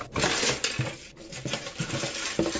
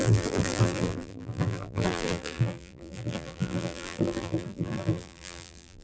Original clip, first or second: first